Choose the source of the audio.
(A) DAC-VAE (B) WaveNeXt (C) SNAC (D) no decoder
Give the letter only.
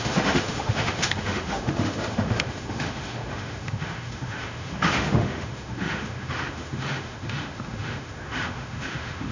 A